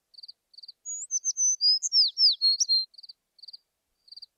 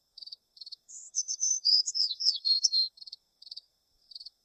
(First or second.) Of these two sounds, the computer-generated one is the second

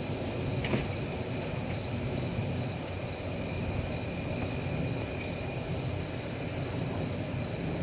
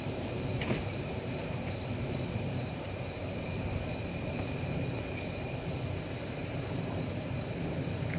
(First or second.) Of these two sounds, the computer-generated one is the second